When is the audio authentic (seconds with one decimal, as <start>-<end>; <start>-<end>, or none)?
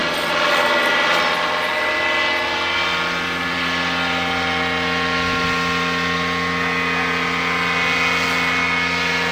0.0-9.3